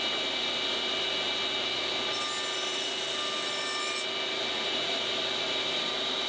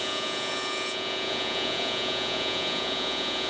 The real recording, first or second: first